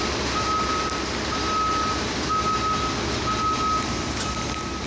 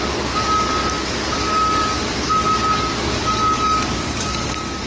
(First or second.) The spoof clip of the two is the second